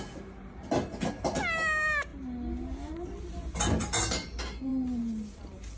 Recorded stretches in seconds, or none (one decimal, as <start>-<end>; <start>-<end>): 0.0-5.8

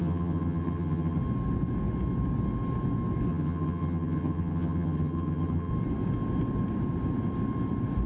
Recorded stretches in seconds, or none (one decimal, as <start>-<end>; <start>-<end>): 1.2-3.3; 5.7-8.1

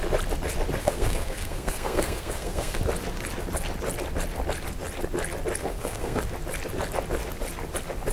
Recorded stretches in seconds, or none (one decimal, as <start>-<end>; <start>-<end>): 0.0-0.8; 2.8-5.6; 6.2-8.1